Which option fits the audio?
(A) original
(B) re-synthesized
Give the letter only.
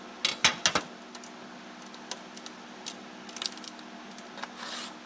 A